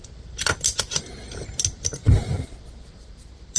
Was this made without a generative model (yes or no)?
yes